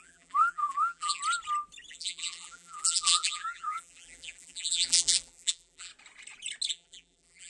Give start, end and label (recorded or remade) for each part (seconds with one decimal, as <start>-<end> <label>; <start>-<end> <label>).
0.0-1.2 remade; 1.2-1.9 recorded; 1.9-5.9 remade; 5.9-6.7 recorded; 6.7-7.5 remade